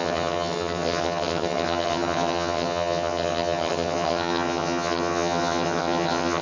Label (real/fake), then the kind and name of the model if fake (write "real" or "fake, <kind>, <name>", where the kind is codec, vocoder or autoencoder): fake, vocoder, HiFi-GAN